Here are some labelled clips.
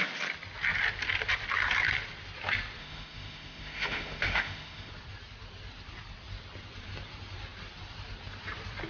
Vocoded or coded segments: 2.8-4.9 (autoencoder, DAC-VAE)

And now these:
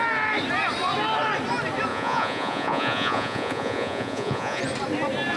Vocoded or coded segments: 1.9-4.6 (vocoder, Vocos)

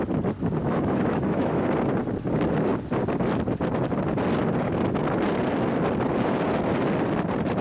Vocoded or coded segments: 0.6-1.6 (autoencoder, DAC-VAE)

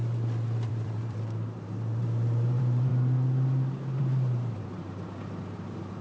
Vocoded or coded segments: 0.7-2.9 (vocoder, BigVGAN v2); 4.0-6.0